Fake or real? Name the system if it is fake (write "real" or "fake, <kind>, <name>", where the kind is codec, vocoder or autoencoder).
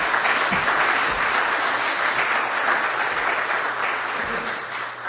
real